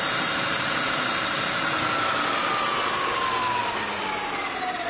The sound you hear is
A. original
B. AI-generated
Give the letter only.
A